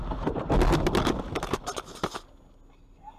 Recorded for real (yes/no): yes